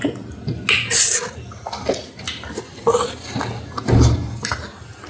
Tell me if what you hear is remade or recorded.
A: recorded